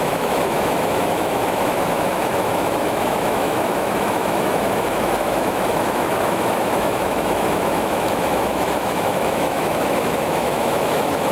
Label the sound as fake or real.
fake